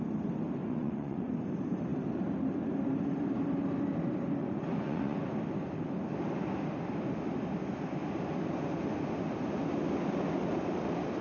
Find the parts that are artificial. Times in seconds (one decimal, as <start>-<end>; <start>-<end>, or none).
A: 0.6-1.3; 4.4-5.2